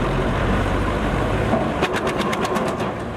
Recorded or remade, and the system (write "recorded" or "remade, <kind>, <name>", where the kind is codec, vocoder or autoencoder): remade, vocoder, BigVGAN v2